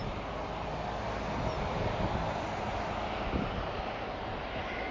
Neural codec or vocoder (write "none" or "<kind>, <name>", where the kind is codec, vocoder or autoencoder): none